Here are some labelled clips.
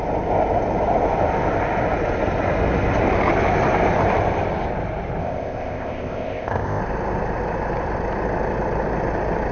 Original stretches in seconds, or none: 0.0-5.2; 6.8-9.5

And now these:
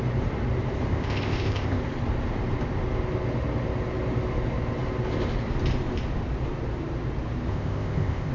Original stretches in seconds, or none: 0.0-0.9; 1.8-7.5

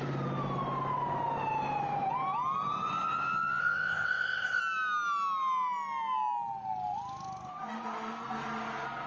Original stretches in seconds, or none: 0.0-3.6; 4.6-9.1

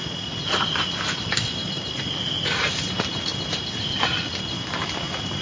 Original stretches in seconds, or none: 0.0-5.4

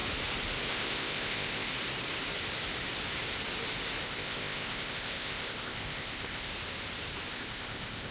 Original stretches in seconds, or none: 0.0-0.7; 1.7-4.0; 6.5-7.3